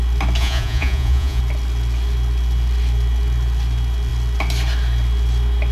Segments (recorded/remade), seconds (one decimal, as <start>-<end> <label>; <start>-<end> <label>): 0.0-0.4 recorded; 0.4-1.4 remade; 1.4-5.7 recorded